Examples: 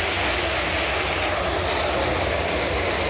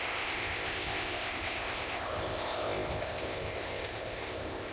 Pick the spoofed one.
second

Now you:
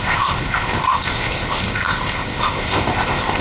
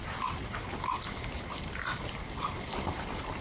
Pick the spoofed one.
first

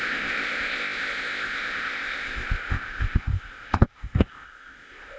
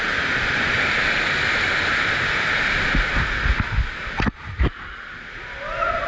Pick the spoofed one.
first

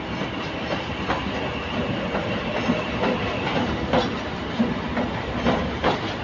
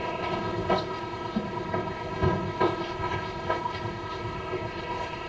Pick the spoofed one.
second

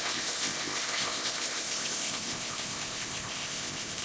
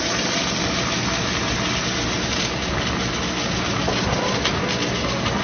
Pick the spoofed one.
first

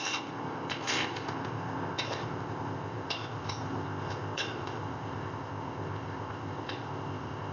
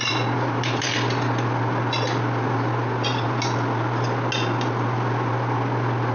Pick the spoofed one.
first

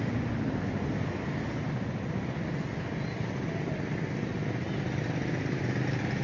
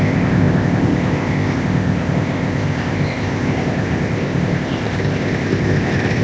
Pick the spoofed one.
second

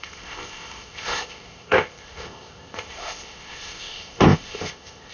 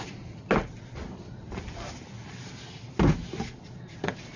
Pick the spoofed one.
first